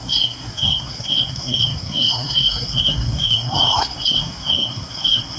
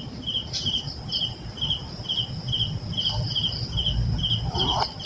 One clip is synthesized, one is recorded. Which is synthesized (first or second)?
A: first